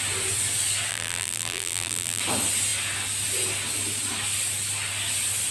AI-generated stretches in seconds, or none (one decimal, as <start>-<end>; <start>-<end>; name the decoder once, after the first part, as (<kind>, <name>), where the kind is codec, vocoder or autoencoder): 0.9-2.2 (vocoder, BigVGAN v2)